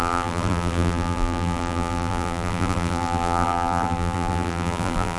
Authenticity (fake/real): fake